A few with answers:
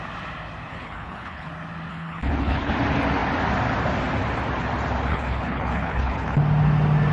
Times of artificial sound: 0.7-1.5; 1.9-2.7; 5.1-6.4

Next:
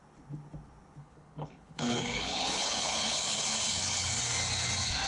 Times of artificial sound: 1.0-4.1

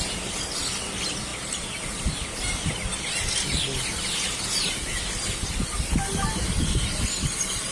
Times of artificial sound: none

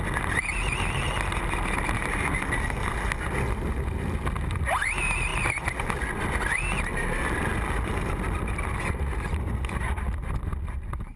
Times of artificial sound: none